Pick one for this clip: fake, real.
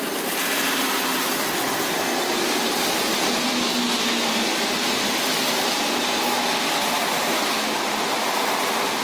real